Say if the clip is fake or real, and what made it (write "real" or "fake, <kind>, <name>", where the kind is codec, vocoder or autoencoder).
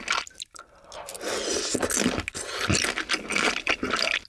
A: real